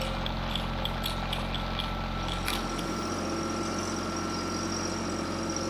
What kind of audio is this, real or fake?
real